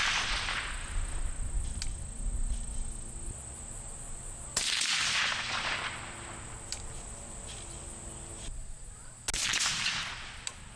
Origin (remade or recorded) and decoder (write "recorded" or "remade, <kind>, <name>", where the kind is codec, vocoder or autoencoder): recorded